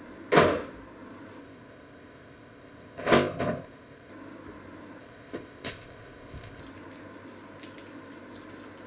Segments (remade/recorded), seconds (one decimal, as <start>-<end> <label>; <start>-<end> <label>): 0.0-1.4 recorded; 1.4-4.1 remade; 4.1-5.0 recorded; 5.0-6.6 remade; 6.6-8.9 recorded